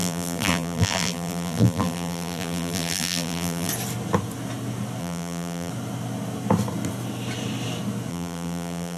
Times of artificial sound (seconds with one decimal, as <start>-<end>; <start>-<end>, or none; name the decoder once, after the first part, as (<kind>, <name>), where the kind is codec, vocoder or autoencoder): 0.0-3.7 (vocoder, BigVGAN v2); 5.0-5.7; 8.1-9.0

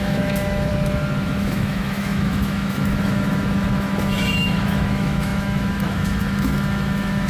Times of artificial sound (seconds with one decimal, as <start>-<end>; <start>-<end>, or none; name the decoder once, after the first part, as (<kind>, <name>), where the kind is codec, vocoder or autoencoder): 0.0-0.7 (autoencoder, DAC-VAE); 1.2-7.3

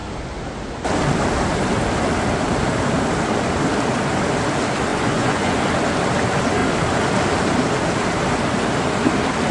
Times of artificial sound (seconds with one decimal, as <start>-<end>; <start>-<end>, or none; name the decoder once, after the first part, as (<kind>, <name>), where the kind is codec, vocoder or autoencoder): 4.9-5.6 (vocoder, Vocos)

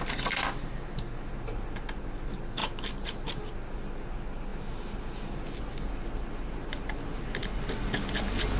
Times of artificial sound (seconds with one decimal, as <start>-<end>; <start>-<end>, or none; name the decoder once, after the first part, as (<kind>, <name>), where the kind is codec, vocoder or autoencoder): none